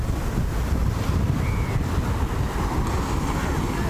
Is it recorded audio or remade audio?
recorded